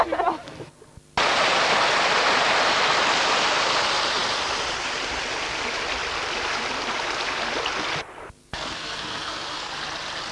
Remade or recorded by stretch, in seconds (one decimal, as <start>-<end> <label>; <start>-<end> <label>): 0.0-8.4 recorded; 8.4-9.7 remade; 9.7-10.3 recorded